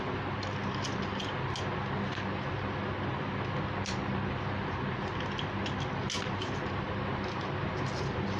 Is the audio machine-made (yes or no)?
no